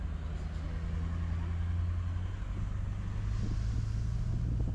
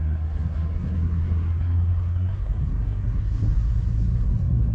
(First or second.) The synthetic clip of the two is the second